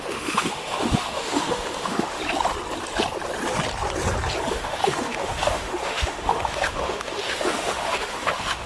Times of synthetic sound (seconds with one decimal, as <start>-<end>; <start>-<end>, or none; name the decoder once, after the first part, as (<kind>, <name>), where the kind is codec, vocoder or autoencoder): 0.0-2.2 (autoencoder, DAC-VAE); 4.5-8.7